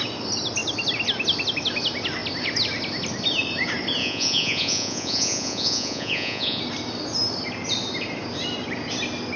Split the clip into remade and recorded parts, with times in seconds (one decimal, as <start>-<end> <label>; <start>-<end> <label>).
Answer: 0.0-4.0 recorded; 4.0-6.6 remade; 6.6-9.4 recorded